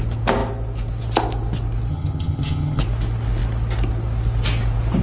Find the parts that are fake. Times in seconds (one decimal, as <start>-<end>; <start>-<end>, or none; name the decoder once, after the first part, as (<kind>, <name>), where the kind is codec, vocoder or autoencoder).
1.9-2.8 (vocoder, HiFi-GAN)